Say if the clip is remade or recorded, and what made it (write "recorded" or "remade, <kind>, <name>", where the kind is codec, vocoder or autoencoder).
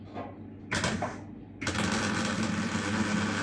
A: recorded